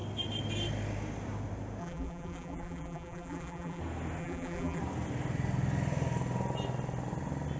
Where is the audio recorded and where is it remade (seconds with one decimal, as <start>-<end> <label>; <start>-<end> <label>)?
0.0-1.8 recorded; 1.8-3.8 remade; 3.8-4.2 recorded; 4.2-4.8 remade; 4.8-7.6 recorded

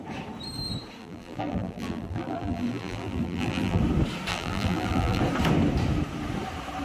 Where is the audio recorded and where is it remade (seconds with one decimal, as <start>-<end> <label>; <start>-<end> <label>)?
0.0-1.0 recorded; 1.0-3.8 remade; 3.8-4.3 recorded; 4.3-5.2 remade; 5.2-6.8 recorded